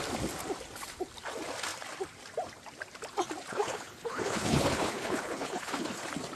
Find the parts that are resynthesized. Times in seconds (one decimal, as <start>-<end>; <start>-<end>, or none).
3.5-6.0